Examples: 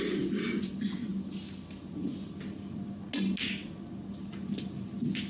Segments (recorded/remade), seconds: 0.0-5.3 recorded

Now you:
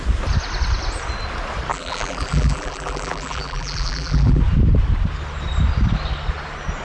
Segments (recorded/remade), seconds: 0.0-1.7 recorded; 1.7-4.4 remade; 4.4-6.8 recorded